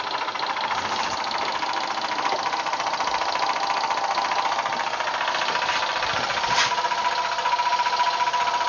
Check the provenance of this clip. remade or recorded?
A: recorded